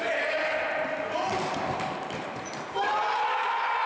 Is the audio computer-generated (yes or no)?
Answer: no